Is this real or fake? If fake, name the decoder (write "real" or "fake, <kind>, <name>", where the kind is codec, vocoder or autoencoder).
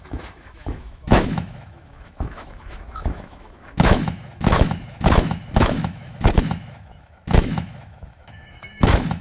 fake, autoencoder, DAC-VAE